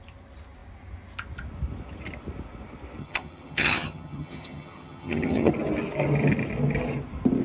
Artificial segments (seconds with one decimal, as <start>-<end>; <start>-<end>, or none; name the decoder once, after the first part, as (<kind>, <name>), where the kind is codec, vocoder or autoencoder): 3.0-5.5 (vocoder, HiFi-GAN)